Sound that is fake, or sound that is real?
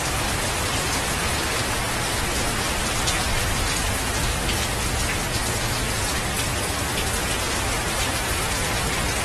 real